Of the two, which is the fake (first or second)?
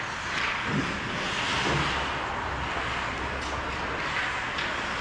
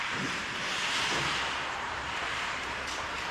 second